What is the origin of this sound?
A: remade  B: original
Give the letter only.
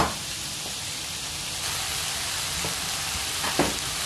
B